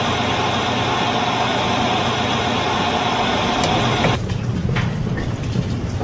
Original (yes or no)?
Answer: yes